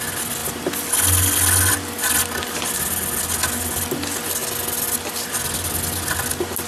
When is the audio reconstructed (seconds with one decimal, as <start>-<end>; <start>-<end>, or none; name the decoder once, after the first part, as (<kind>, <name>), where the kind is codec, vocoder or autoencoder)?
none